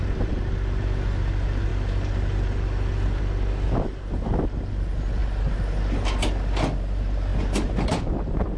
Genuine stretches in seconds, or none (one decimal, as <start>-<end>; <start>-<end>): 0.0-8.6